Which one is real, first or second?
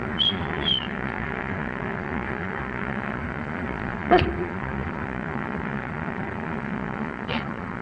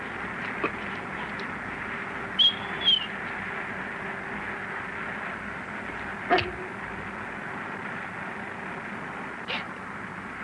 second